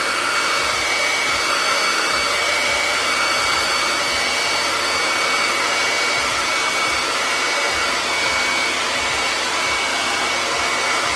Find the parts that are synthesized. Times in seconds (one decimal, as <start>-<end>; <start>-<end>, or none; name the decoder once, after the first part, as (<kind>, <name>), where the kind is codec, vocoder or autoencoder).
none